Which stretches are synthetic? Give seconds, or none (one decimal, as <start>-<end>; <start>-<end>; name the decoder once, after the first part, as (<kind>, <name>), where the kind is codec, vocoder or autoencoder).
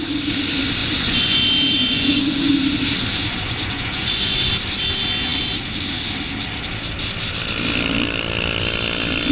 0.8-1.4 (vocoder, Vocos); 1.8-2.5; 3.2-4.5